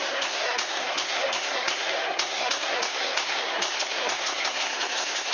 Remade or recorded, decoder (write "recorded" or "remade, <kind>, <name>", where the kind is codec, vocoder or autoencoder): remade, codec, SNAC